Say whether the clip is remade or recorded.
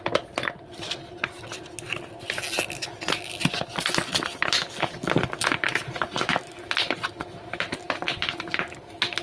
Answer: recorded